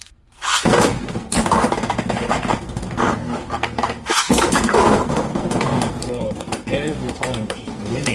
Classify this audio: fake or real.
fake